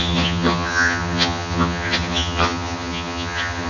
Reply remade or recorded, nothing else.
remade